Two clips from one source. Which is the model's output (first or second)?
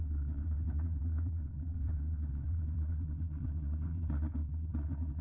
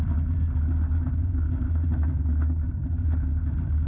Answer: first